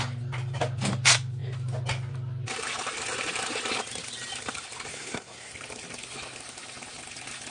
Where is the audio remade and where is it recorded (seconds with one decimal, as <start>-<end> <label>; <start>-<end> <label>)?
0.0-4.9 recorded; 4.9-5.5 remade; 5.5-7.5 recorded